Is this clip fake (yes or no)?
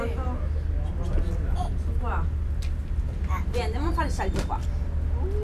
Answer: no